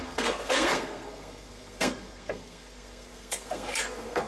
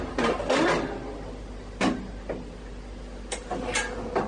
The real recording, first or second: second